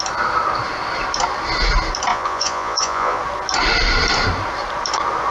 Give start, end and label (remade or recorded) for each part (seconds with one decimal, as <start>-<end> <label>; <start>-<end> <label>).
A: 0.0-2.1 recorded; 2.1-3.2 remade; 3.2-5.3 recorded